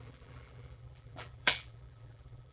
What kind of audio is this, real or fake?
fake